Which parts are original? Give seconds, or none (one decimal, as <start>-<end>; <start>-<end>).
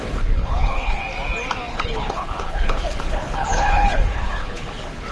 1.0-1.7